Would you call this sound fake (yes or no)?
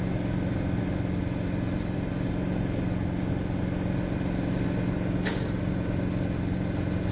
no